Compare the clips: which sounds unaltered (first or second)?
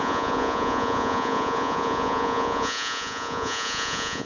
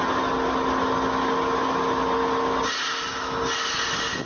second